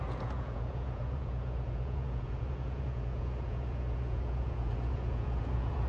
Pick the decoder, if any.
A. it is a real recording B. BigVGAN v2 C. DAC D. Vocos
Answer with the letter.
D